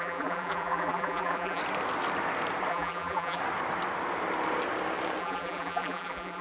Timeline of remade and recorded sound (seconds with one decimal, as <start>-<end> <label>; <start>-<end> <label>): 0.0-1.6 remade; 1.6-2.7 recorded; 2.7-3.4 remade; 3.4-5.2 recorded; 5.2-6.4 remade